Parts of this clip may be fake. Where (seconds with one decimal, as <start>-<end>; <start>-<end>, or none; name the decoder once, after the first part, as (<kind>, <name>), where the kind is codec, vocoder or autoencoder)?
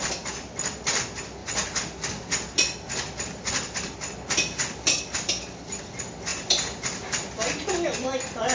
6.3-7.7 (vocoder, BigVGAN v2)